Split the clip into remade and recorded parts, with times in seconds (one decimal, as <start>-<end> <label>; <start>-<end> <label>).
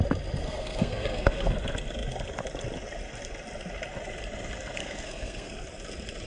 0.0-0.4 recorded; 0.4-1.5 remade; 1.5-4.8 recorded; 4.8-5.6 remade; 5.6-6.3 recorded